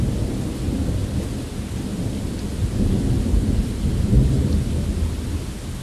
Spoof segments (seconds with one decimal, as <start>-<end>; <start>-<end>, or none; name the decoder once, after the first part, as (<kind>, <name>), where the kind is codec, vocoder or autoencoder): none

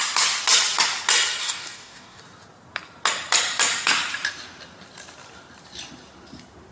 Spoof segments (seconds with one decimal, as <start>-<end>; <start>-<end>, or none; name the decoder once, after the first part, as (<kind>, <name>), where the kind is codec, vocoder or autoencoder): 1.4-2.2 (codec, DAC)

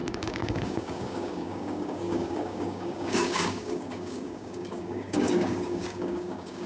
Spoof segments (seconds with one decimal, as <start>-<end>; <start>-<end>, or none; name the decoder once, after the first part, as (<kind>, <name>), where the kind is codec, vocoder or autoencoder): 0.0-6.7 (codec, DAC)

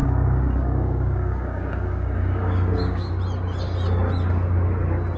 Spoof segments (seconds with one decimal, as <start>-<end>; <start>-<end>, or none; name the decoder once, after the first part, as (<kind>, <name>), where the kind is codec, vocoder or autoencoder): 0.0-3.1 (codec, DAC)

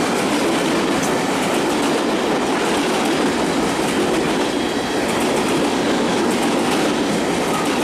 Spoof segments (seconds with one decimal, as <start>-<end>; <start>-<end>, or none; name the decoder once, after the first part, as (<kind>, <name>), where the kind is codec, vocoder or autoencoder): 5.7-6.3 (codec, DAC)

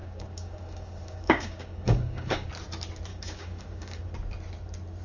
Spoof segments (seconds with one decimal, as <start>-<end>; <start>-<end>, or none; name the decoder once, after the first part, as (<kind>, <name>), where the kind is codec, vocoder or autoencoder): 0.0-2.5 (codec, DAC); 3.1-4.1

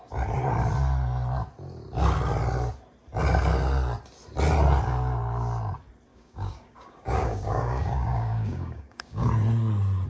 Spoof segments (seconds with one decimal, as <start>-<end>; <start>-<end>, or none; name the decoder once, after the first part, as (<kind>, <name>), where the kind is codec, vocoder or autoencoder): 6.1-9.3 (codec, DAC)